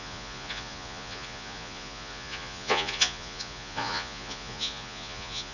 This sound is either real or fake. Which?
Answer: fake